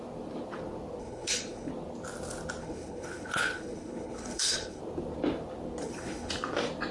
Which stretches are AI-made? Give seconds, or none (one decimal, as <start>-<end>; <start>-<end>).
1.0-1.7; 2.6-4.8; 5.8-6.3